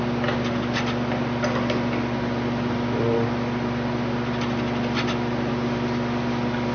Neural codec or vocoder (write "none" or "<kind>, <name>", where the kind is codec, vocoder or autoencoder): none